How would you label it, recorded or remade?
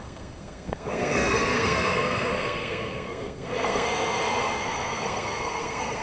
remade